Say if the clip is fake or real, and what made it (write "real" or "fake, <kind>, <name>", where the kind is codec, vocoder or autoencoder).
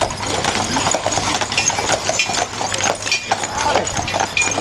real